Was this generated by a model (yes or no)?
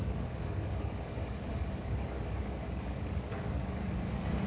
yes